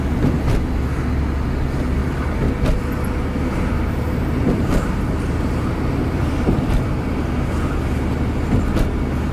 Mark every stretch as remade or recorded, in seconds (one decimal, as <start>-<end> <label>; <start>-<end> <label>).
0.0-2.0 recorded; 2.0-2.5 remade; 2.5-5.1 recorded; 5.1-6.2 remade; 6.2-9.3 recorded